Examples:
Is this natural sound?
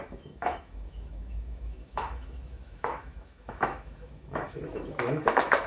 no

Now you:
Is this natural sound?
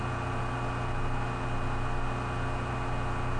yes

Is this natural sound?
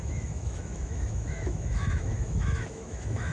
no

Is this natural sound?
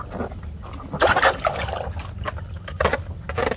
yes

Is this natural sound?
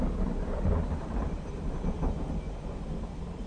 yes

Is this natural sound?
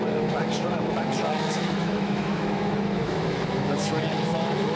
no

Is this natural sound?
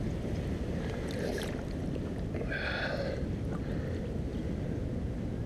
yes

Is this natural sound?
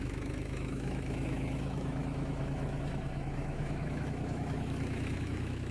no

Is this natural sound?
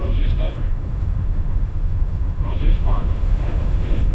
no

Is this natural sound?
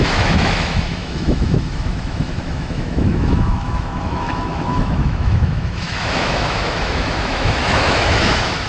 no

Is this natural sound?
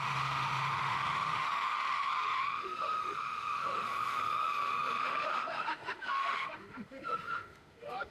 no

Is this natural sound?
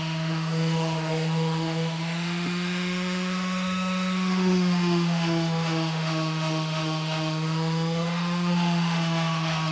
no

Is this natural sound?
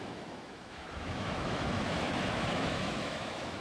no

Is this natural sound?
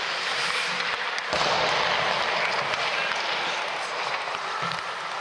yes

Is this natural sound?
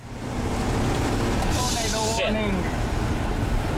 yes